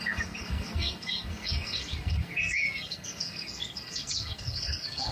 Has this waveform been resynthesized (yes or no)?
yes